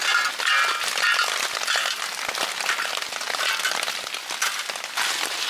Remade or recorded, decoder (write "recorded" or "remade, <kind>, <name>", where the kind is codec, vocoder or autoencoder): recorded